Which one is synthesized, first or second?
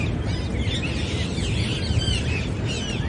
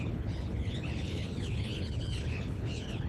second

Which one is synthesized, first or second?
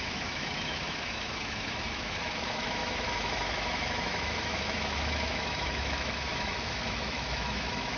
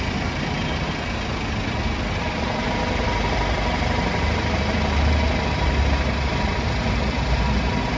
first